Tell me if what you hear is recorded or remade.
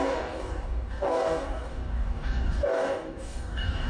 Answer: remade